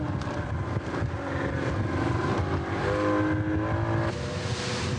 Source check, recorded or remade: recorded